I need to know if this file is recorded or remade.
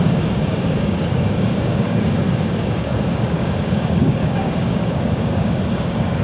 remade